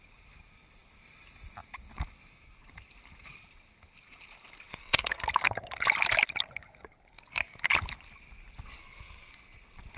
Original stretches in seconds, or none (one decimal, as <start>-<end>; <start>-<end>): 0.0-4.7; 5.3-8.8; 9.3-10.0